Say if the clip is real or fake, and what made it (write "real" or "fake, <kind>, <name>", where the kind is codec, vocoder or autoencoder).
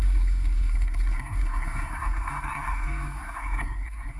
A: fake, codec, SNAC